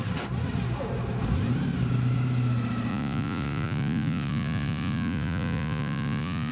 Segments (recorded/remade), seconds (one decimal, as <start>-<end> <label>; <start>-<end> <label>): 0.0-2.9 recorded; 2.9-6.5 remade